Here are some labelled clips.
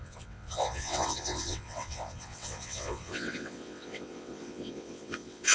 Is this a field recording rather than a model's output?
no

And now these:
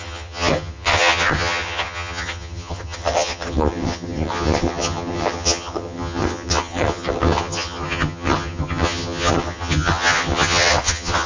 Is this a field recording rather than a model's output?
no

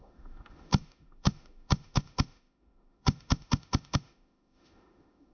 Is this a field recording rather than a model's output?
no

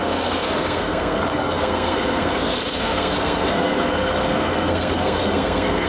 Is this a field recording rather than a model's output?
no